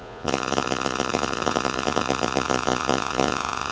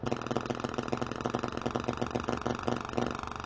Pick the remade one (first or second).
first